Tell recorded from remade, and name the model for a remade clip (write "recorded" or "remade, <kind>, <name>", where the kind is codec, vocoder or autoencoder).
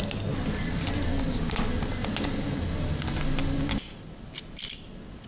recorded